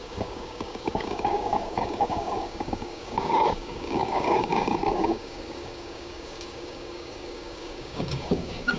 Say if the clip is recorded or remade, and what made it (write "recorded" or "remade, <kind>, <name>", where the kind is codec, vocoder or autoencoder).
remade, codec, DAC